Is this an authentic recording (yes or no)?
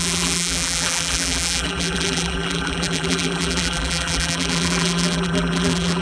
no